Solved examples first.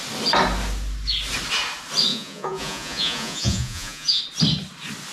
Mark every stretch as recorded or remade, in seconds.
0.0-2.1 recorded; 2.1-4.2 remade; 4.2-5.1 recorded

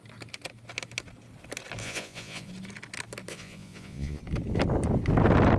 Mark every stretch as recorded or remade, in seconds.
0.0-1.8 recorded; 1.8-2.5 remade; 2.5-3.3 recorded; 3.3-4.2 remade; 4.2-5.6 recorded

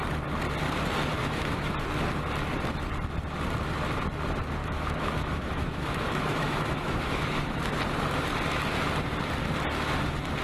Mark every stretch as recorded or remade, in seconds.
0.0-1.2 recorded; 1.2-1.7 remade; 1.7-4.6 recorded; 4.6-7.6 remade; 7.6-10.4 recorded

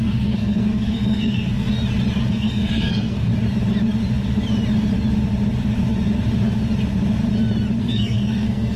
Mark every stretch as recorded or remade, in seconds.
0.0-1.7 remade; 1.7-2.3 recorded; 2.3-3.3 remade; 3.3-7.8 recorded; 7.8-8.8 remade

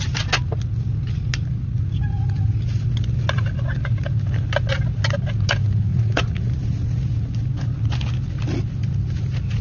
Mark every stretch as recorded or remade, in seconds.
0.0-5.9 recorded; 5.9-6.5 remade; 6.5-9.6 recorded